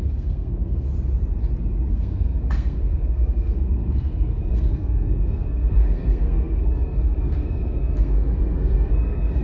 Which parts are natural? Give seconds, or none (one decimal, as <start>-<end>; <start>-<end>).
0.9-1.9

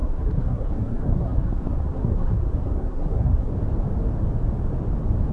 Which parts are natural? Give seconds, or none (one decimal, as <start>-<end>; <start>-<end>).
3.5-5.3

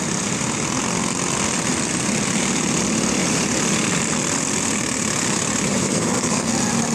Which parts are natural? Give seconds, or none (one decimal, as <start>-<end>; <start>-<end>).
0.0-5.8; 6.5-6.9

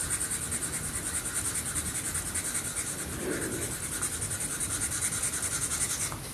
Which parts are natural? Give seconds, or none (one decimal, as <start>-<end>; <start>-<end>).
0.0-6.3

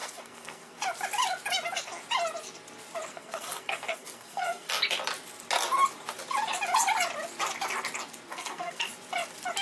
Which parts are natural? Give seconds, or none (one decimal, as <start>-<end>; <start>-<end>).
0.8-3.1; 4.7-8.3; 8.9-9.6

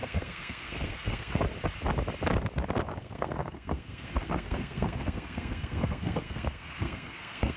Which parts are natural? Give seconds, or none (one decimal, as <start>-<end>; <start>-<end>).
1.4-3.0

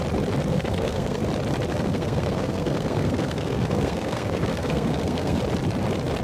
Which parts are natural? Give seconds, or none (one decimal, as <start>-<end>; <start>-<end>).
0.0-0.5; 1.2-1.7; 5.4-6.2